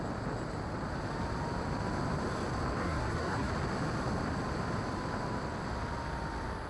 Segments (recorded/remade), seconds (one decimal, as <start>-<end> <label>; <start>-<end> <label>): 0.0-2.8 recorded; 2.8-3.5 remade; 3.5-6.7 recorded